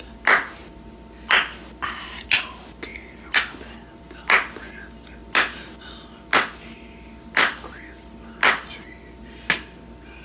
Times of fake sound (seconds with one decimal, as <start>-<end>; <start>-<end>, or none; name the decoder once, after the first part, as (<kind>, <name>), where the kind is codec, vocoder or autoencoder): none